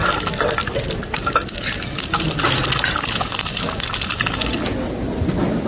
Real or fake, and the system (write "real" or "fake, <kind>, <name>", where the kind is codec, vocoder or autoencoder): real